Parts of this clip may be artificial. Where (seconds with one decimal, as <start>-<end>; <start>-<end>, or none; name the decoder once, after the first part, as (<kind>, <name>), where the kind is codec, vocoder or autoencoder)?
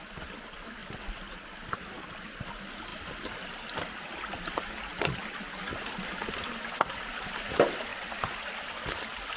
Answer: none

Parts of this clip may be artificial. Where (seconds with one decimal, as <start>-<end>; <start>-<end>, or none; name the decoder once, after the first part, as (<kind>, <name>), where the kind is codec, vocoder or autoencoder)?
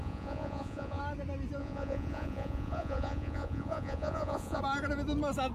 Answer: 0.0-1.0 (vocoder, Vocos); 1.6-4.6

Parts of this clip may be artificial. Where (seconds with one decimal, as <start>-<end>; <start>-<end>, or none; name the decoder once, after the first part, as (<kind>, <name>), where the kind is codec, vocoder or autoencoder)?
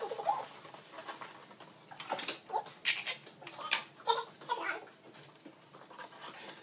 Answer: none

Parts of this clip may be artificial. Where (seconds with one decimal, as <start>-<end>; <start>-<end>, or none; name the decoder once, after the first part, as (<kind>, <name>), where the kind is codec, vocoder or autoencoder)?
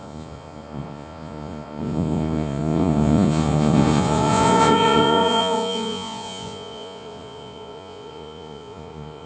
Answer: 0.0-9.3 (vocoder, Vocos)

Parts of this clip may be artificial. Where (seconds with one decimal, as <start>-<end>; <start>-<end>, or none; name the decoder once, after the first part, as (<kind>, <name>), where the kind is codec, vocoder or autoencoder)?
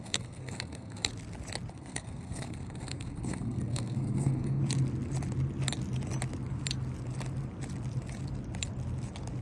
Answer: 0.0-1.1 (codec, SNAC); 1.7-4.6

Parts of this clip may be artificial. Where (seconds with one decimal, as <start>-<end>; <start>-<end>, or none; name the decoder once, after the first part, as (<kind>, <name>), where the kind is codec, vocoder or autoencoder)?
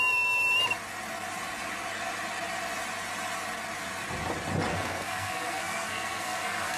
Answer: 4.7-6.8 (codec, SNAC)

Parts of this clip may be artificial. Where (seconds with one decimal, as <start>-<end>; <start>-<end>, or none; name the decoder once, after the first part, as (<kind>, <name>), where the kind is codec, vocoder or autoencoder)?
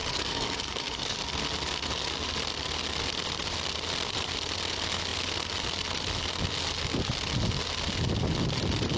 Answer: 0.0-1.2 (codec, DAC)